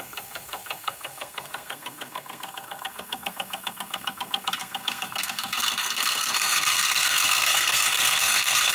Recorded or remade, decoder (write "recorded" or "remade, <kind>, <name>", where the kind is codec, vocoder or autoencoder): remade, codec, SNAC